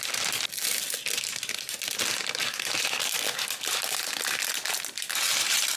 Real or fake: real